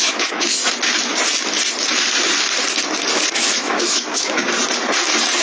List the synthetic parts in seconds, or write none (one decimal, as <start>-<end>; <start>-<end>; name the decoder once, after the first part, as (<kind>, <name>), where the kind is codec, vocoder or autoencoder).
0.0-0.6 (autoencoder, DAC-VAE); 3.5-4.4